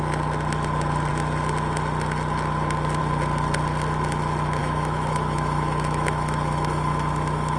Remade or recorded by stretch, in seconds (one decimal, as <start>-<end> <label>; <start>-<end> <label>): 0.0-4.6 recorded; 4.6-7.6 remade